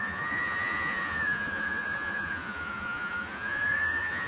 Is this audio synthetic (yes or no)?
yes